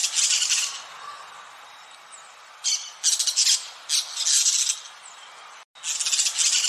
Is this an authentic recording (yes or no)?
yes